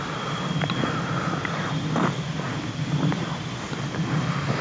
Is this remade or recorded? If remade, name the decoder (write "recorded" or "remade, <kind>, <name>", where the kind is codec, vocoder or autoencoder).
recorded